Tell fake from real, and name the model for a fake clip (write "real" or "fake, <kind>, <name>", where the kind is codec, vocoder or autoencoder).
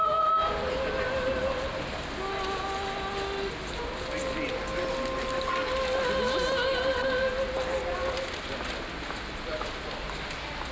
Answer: real